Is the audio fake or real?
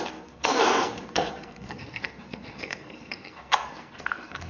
fake